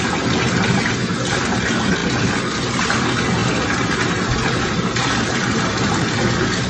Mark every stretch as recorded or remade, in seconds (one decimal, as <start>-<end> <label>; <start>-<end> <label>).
0.0-6.7 recorded